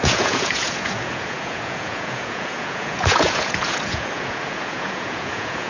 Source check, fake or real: fake